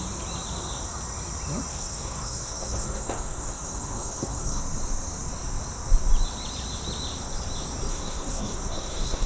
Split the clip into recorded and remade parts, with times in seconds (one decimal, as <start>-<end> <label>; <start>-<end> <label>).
0.0-1.7 recorded; 1.7-4.6 remade; 4.6-7.9 recorded; 7.9-9.3 remade

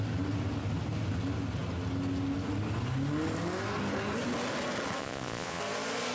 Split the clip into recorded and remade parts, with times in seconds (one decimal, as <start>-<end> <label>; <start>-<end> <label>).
0.0-5.0 recorded; 5.0-5.6 remade; 5.6-6.1 recorded

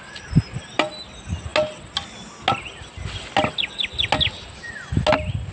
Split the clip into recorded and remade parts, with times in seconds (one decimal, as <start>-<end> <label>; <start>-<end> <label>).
0.0-5.5 recorded